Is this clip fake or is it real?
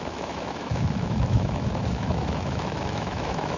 fake